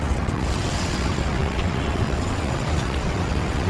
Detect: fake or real fake